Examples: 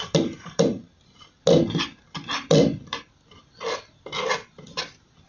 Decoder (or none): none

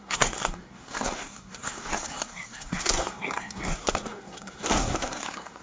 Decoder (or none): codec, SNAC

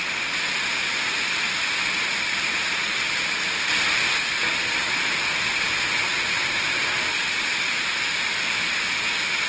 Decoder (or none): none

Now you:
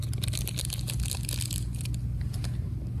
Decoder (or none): none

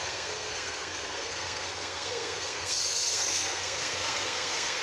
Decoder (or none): codec, SNAC